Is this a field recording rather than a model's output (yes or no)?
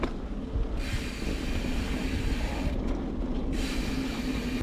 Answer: yes